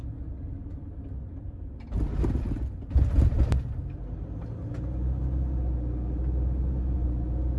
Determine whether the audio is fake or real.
real